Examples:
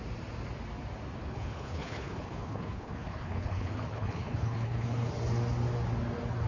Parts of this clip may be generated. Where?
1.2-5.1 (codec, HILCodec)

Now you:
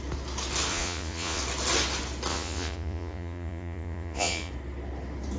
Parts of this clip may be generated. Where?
0.7-1.4 (vocoder, Vocos); 2.3-4.5